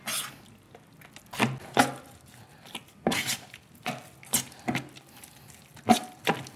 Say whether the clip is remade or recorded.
recorded